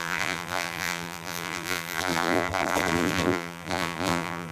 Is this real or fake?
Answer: fake